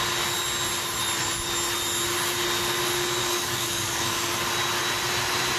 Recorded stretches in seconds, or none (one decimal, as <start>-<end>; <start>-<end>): 0.0-3.2; 4.4-5.6